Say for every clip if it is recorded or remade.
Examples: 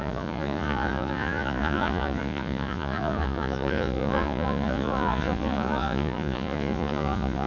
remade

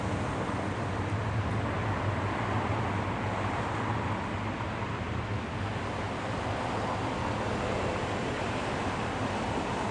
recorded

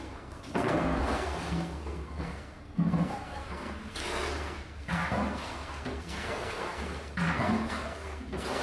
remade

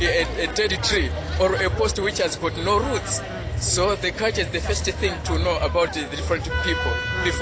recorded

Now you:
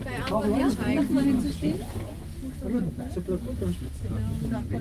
recorded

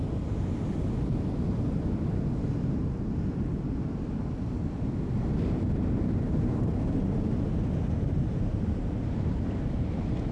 recorded